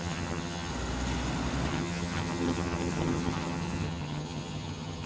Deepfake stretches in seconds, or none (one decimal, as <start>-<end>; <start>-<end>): 0.0-0.7; 1.7-5.1